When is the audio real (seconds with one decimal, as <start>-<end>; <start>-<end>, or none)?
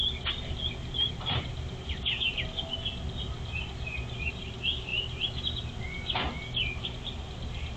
0.0-7.8